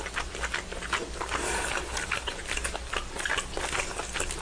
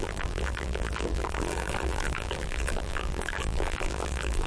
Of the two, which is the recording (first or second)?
first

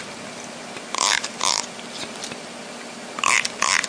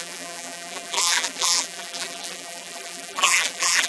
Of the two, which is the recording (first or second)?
first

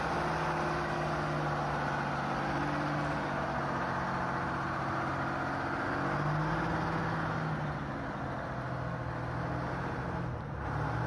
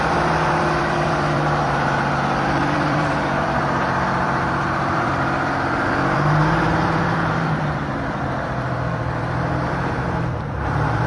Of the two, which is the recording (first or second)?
first